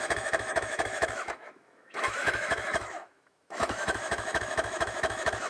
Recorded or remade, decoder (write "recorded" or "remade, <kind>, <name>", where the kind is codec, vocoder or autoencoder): remade, autoencoder, DAC-VAE